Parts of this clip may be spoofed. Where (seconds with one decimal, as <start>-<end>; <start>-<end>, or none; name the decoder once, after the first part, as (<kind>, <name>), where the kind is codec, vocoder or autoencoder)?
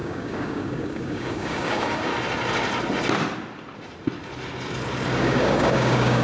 0.0-2.1 (codec, DAC); 5.2-6.2